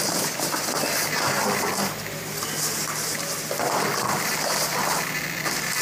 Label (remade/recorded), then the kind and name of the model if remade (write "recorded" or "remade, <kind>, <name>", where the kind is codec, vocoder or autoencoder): recorded